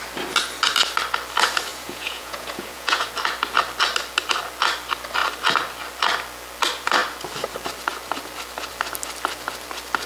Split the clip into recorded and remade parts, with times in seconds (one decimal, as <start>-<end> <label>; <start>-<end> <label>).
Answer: 0.0-1.7 recorded; 1.7-3.1 remade; 3.1-10.1 recorded